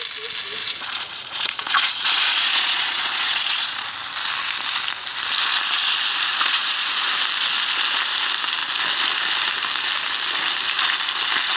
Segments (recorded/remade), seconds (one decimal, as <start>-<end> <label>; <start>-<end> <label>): 0.0-0.6 recorded; 0.6-3.9 remade; 3.9-6.3 recorded; 6.3-7.1 remade; 7.1-11.6 recorded